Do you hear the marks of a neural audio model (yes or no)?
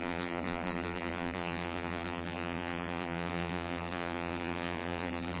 yes